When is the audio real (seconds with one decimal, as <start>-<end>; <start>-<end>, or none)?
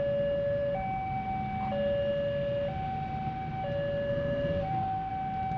0.0-4.1; 5.1-5.6